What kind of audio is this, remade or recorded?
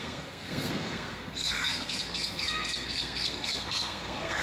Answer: remade